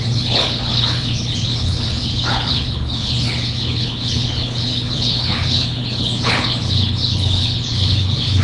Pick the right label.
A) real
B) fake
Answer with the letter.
B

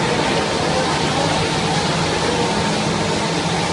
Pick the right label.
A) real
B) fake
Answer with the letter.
A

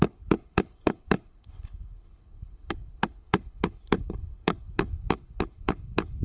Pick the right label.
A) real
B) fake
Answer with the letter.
B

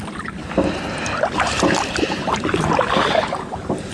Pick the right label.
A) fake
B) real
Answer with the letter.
B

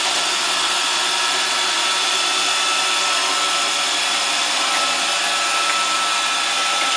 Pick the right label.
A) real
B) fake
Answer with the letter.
A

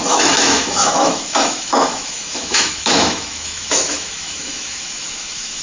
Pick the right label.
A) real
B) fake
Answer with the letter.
B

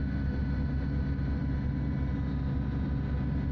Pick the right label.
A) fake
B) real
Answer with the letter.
B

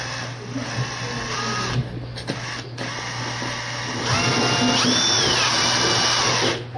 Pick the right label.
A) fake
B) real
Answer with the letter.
B